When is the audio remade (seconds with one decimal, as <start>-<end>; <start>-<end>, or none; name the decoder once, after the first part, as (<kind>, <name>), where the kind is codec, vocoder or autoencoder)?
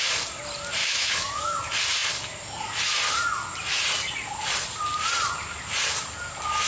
0.8-1.6 (autoencoder, DAC-VAE)